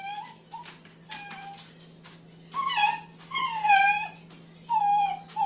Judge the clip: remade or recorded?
recorded